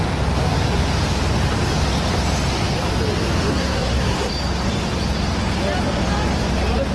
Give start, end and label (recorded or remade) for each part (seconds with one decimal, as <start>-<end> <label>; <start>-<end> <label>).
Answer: 0.0-3.5 recorded; 3.5-4.3 remade; 4.3-6.9 recorded